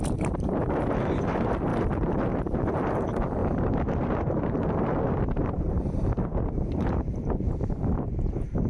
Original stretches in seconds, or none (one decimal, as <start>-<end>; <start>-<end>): none